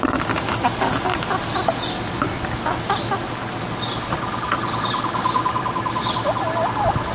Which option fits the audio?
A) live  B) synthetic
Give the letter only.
A